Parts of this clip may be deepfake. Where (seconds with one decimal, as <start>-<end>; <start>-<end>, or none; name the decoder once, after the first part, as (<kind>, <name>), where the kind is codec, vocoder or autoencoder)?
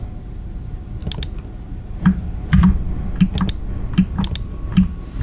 none